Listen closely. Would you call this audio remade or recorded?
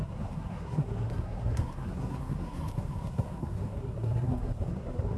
remade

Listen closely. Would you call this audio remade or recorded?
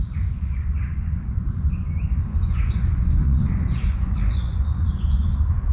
remade